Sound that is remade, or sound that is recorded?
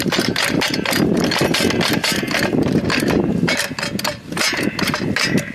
recorded